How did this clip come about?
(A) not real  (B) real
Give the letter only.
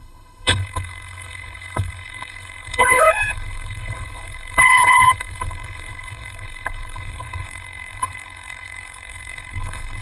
A